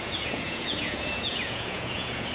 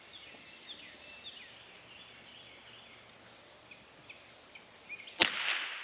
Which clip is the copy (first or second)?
first